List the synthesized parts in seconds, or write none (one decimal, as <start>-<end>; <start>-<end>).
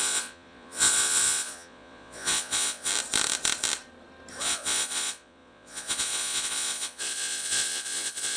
0.0-2.9; 4.4-8.4